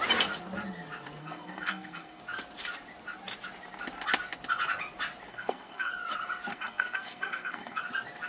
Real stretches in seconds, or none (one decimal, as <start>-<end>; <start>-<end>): 0.0-1.2; 2.2-5.3; 5.9-6.5; 7.8-8.3